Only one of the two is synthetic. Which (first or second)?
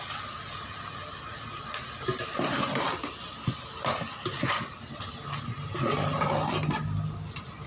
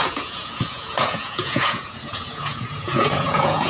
second